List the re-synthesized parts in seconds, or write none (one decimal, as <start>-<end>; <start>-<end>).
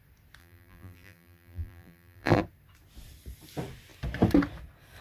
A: 0.4-2.4